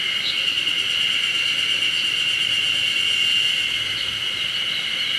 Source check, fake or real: real